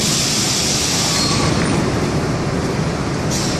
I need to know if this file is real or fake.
real